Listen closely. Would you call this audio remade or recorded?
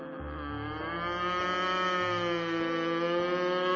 recorded